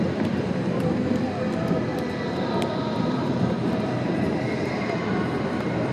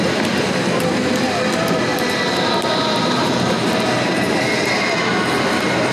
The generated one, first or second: first